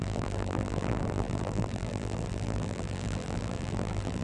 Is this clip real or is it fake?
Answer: fake